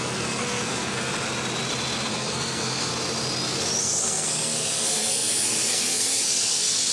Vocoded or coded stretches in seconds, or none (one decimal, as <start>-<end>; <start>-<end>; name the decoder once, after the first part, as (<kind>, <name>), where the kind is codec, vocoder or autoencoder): 0.0-1.1 (codec, SNAC); 2.1-2.9; 3.8-6.9